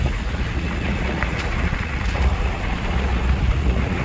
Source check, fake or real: fake